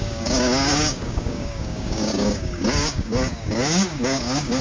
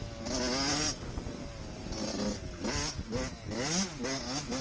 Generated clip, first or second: first